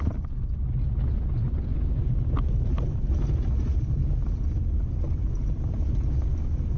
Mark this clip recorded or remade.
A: recorded